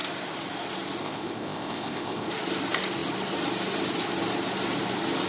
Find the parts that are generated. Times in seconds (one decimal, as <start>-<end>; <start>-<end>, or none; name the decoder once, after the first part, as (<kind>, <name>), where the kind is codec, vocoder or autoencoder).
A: 1.0-2.3 (codec, ZipCodec)